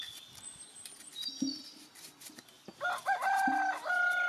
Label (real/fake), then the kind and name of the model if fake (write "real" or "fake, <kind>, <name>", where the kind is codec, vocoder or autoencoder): real